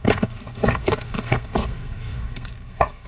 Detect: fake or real fake